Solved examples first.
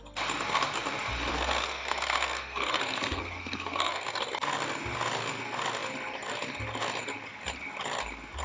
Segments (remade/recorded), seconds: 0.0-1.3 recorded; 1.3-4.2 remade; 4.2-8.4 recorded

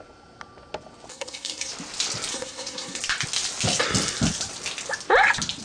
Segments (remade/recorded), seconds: 0.0-1.1 recorded; 1.1-1.7 remade; 1.7-2.3 recorded; 2.3-3.0 remade; 3.0-5.6 recorded